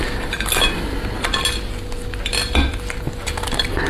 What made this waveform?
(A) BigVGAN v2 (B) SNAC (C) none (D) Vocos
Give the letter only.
C